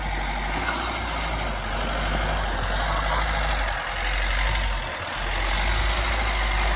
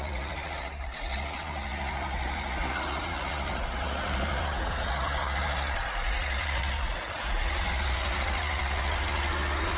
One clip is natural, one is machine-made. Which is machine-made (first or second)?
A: second